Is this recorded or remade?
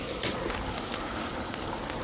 recorded